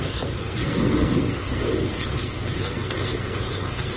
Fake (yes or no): yes